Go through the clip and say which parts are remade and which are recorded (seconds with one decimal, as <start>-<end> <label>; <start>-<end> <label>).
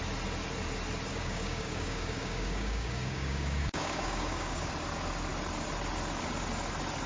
0.0-1.1 recorded; 1.1-4.7 remade; 4.7-7.1 recorded